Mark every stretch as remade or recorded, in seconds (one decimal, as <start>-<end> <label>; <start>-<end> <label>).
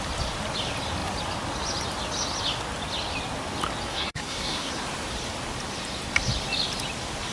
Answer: 0.0-3.9 recorded; 3.9-4.7 remade; 4.7-7.3 recorded